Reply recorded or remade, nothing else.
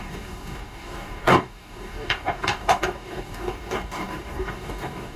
remade